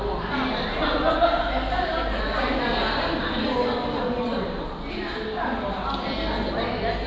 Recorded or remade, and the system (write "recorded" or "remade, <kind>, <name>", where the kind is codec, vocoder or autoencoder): recorded